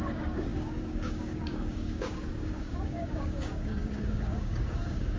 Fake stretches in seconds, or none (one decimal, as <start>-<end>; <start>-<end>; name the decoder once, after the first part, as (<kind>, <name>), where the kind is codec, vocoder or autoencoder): 0.0-5.2 (codec, DAC)